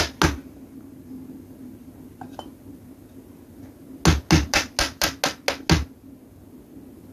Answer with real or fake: real